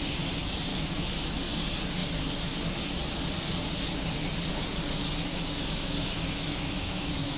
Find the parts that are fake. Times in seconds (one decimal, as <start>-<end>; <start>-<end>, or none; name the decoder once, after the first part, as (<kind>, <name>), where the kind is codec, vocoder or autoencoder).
0.7-1.4 (autoencoder, DAC-VAE); 5.3-7.4